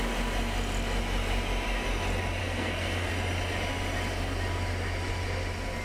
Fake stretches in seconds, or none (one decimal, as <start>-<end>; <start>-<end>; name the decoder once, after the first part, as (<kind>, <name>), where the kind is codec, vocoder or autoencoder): 2.4-3.1 (codec, SNAC)